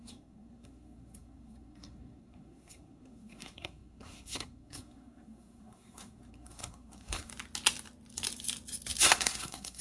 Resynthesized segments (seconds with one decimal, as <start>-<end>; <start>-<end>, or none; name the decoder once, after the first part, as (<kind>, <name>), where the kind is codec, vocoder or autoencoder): 0.0-7.3 (codec, SNAC); 9.0-9.8